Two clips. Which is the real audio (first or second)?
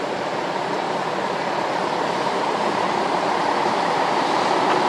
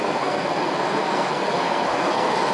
first